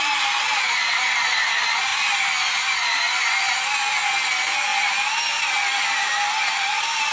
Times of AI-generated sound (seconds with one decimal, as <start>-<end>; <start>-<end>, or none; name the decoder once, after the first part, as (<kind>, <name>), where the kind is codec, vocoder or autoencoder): none